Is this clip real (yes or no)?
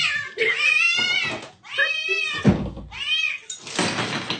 yes